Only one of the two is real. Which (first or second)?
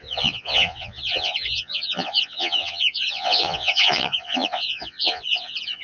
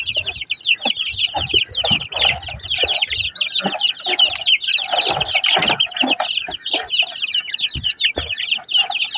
second